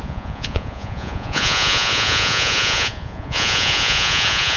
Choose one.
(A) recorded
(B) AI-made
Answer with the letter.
B